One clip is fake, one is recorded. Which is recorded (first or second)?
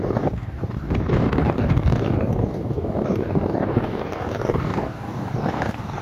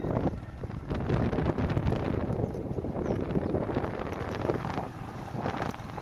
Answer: second